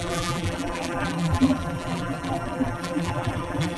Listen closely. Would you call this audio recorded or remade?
remade